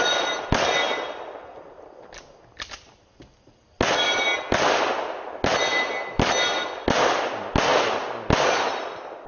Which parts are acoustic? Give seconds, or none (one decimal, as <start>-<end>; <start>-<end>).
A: 0.0-9.3